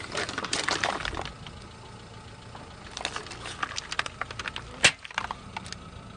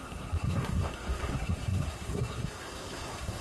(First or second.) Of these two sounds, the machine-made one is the second